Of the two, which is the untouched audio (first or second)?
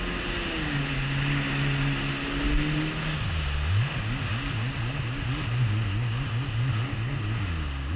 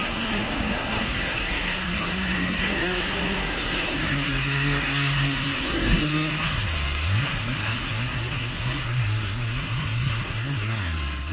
first